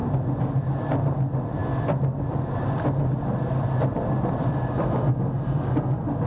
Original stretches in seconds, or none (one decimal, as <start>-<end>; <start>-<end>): 0.0-1.6; 5.1-6.3